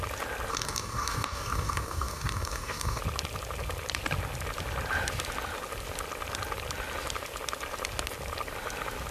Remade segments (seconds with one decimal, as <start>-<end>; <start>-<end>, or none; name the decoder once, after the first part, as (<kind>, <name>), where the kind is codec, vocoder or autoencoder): 0.5-3.0 (codec, DAC)